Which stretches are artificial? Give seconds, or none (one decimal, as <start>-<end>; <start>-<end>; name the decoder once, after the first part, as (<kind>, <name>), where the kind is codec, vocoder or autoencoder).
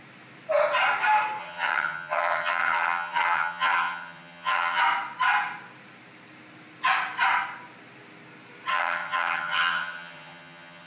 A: 1.4-4.8 (vocoder, HiFi-GAN); 8.7-10.9